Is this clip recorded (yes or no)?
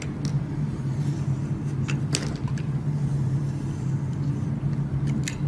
yes